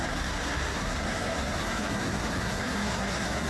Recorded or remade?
remade